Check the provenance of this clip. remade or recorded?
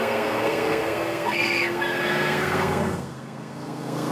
remade